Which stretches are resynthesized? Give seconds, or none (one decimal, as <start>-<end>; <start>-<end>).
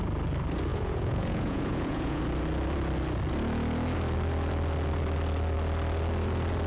0.7-2.2